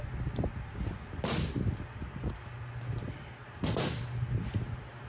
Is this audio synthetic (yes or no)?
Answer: no